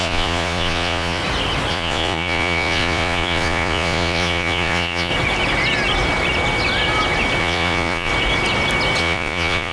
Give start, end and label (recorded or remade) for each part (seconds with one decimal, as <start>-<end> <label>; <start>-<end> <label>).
0.0-1.2 remade; 1.2-1.7 recorded; 1.7-5.1 remade; 5.1-7.4 recorded; 7.4-8.1 remade; 8.1-9.0 recorded; 9.0-9.7 remade